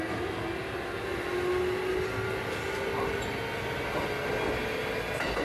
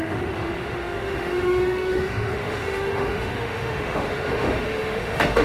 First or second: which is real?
first